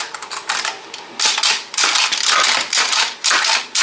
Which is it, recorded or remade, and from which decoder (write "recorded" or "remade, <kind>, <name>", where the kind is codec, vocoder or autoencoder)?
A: recorded